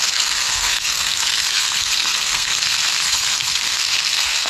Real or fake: fake